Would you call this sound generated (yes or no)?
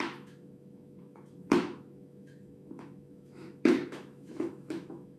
yes